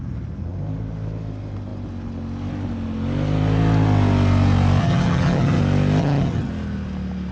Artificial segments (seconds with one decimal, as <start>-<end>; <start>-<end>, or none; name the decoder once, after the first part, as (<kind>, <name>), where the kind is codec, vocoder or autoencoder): 4.8-5.6 (vocoder, HiFi-GAN); 6.0-6.5